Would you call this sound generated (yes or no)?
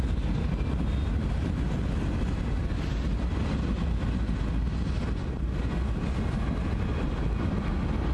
no